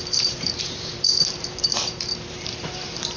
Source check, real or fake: fake